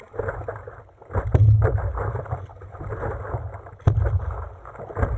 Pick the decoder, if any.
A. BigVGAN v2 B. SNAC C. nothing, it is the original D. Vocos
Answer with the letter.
C